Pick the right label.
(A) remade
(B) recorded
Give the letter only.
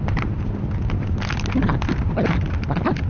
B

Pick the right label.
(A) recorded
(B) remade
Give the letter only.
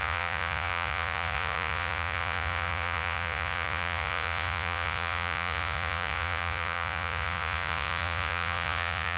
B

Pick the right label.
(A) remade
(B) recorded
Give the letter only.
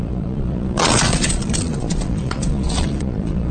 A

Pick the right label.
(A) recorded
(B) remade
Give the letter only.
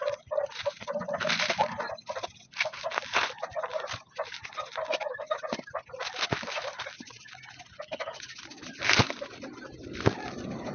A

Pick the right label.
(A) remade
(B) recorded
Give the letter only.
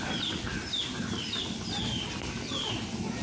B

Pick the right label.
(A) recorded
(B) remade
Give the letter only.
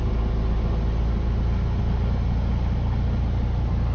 A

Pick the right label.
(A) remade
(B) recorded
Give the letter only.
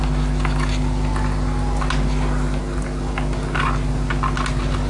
B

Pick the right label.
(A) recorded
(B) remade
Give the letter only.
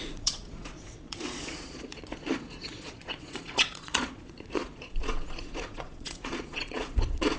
B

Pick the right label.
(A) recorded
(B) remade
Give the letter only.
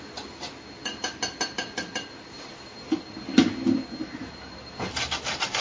A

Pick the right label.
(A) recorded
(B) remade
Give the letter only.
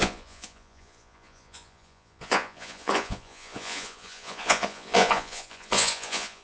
B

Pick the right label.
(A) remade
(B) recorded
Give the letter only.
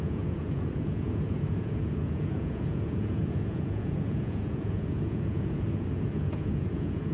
A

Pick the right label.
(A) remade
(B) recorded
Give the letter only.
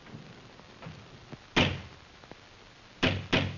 B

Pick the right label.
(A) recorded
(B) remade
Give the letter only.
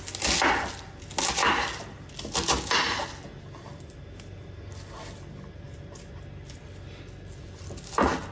A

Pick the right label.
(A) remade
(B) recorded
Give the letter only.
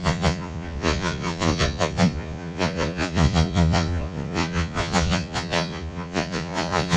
A